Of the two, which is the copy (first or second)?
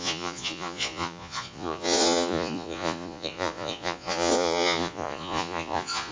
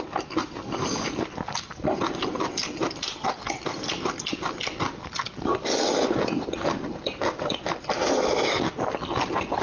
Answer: first